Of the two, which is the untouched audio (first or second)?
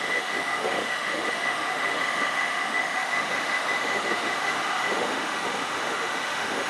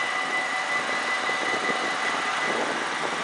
second